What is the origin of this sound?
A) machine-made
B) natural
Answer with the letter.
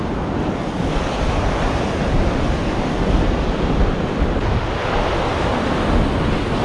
B